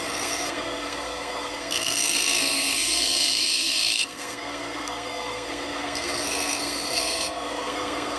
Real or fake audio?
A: fake